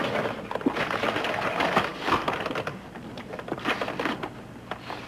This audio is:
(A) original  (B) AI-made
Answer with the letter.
A